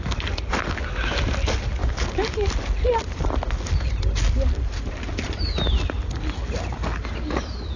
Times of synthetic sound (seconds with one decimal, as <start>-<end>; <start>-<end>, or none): none